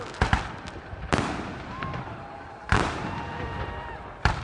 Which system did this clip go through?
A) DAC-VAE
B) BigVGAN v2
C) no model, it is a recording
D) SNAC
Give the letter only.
B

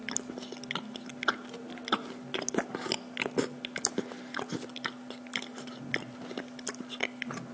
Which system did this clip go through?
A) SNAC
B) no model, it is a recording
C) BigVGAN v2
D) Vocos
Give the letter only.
B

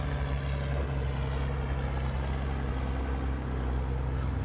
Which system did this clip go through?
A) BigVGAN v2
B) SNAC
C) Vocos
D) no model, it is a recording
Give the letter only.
D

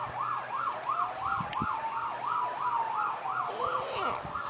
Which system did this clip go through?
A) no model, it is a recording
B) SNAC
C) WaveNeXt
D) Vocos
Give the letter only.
A